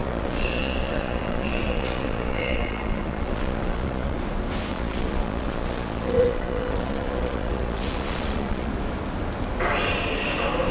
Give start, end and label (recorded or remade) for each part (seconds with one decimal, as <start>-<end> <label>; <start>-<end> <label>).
0.0-4.2 remade; 4.2-4.7 recorded; 4.7-8.7 remade; 8.7-10.7 recorded